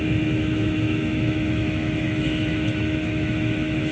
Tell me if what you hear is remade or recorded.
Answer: remade